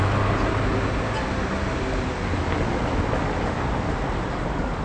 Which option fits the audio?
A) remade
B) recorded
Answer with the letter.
B